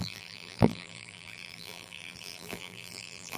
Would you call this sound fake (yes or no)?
yes